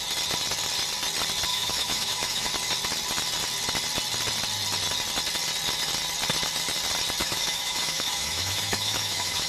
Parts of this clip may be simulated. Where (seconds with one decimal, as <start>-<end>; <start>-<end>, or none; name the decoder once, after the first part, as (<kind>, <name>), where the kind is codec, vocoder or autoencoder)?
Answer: 1.5-2.5 (autoencoder, DAC-VAE); 7.2-9.5